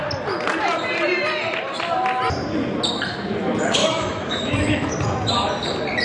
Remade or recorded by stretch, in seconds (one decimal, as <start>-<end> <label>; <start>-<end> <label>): 0.0-3.8 recorded; 3.8-4.9 remade; 4.9-6.0 recorded